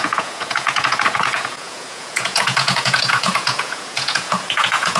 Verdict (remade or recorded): remade